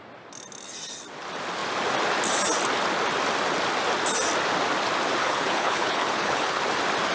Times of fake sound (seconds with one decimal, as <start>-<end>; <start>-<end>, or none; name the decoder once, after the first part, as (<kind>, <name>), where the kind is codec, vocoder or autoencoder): 5.2-6.6 (codec, HILCodec)